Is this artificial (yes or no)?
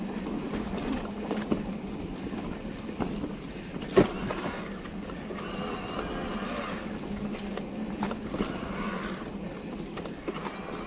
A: no